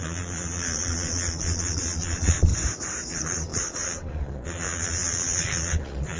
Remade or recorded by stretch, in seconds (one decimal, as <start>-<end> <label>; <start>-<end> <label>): 0.0-2.5 remade; 2.5-3.1 recorded; 3.1-6.2 remade